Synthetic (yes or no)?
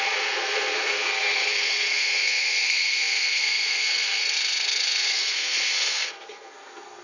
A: yes